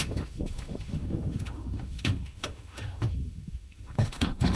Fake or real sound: fake